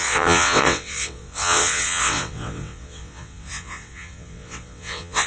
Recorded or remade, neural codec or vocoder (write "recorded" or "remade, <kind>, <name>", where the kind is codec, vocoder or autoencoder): remade, vocoder, WaveNeXt